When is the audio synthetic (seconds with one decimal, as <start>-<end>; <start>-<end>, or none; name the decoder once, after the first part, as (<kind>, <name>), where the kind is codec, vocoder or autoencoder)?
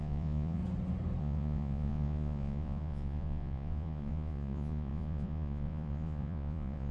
0.0-0.6 (vocoder, Vocos); 1.2-6.9